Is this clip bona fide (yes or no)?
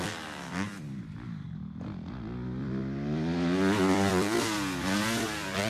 no